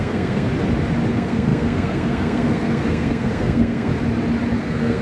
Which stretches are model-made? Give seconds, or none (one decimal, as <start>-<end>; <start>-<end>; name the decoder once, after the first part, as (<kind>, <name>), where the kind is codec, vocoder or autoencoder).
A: 0.0-0.5 (codec, SNAC); 1.1-3.9; 4.6-5.0